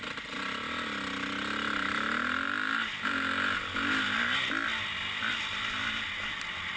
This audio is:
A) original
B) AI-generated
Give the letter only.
A